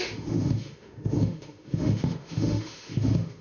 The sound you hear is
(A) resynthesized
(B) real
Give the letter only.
A